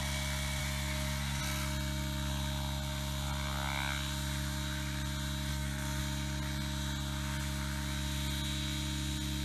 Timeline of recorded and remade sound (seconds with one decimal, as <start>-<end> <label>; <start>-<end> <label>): 0.0-0.6 recorded; 0.6-1.4 remade; 1.4-5.5 recorded; 5.5-6.0 remade; 6.0-9.4 recorded